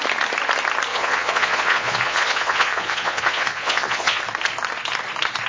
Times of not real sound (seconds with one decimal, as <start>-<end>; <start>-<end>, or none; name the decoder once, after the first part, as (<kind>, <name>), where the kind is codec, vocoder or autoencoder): 0.9-4.2 (vocoder, Vocos)